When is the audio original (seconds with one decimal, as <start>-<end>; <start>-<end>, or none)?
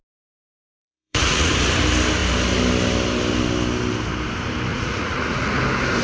0.0-0.4; 1.5-4.7; 5.6-6.0